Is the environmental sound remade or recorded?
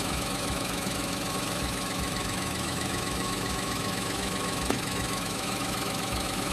remade